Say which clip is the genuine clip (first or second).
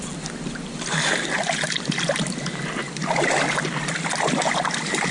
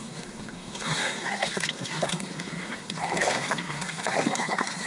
first